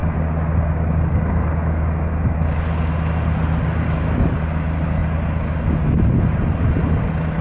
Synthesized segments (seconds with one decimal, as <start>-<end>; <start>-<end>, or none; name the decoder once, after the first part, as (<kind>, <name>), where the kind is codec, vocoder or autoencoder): none